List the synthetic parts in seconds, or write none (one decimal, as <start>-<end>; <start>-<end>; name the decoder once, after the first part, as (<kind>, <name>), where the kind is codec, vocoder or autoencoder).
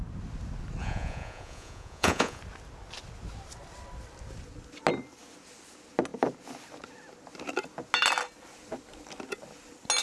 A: 0.8-2.4 (vocoder, Vocos)